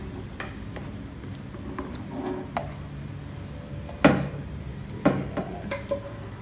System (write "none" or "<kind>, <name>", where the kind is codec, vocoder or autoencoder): none